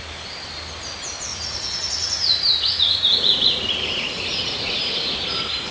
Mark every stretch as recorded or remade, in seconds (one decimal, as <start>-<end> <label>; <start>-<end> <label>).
0.0-1.3 recorded; 1.3-4.7 remade; 4.7-5.7 recorded